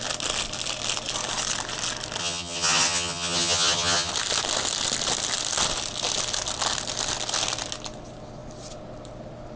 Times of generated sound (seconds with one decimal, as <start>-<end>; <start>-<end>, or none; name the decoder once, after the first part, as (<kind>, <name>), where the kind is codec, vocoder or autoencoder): 2.2-4.1 (vocoder, HiFi-GAN)